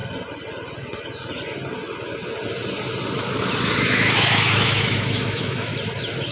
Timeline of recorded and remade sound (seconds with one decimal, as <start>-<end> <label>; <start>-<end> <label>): 0.0-3.8 recorded; 3.8-5.7 remade; 5.7-6.3 recorded

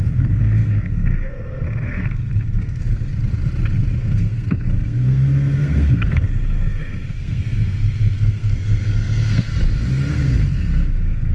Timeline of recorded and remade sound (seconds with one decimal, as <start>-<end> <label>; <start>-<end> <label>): 0.0-3.1 remade; 3.1-4.0 recorded; 4.0-9.5 remade; 9.5-10.1 recorded; 10.1-11.3 remade

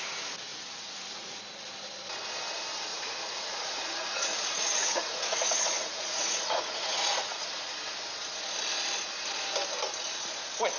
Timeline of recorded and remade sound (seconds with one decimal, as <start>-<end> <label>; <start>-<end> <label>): 0.0-0.5 recorded; 0.5-1.4 remade; 1.4-2.9 recorded; 2.9-7.4 remade; 7.4-10.8 recorded

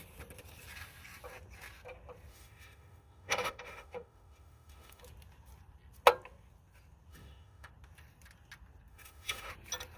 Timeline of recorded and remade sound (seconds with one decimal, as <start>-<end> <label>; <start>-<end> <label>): 0.0-2.3 recorded; 2.3-5.0 remade; 5.0-7.1 recorded; 7.1-7.7 remade; 7.7-8.9 recorded; 8.9-9.5 remade; 9.5-10.0 recorded